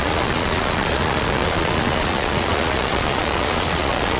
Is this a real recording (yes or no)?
no